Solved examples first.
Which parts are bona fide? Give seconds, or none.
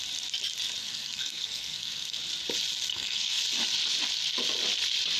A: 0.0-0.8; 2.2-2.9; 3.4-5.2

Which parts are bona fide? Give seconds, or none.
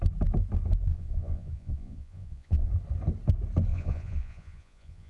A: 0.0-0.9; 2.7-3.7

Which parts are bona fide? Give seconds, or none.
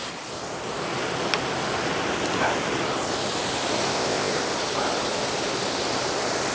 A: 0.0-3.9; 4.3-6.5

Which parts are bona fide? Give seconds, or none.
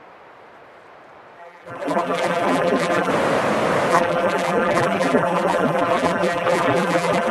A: 0.0-1.4; 3.1-3.9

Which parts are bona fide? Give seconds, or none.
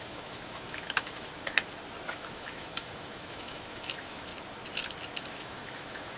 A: 1.3-2.1; 4.3-5.2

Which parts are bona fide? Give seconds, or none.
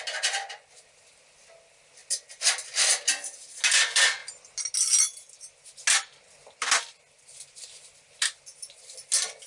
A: 0.0-9.5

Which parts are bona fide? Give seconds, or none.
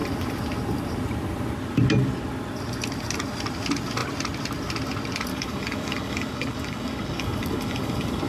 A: 0.0-5.3